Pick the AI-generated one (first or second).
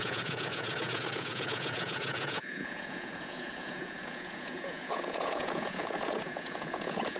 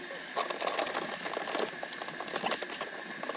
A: first